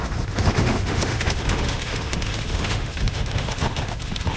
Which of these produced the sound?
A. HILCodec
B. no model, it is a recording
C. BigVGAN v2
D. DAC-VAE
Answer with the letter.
D